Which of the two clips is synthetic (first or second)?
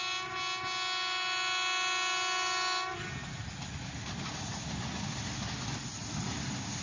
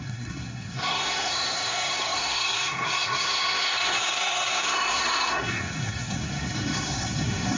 second